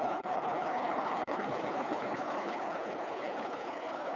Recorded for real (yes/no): no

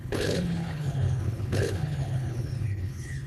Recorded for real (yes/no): no